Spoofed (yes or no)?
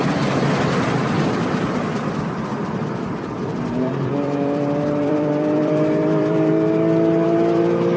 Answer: yes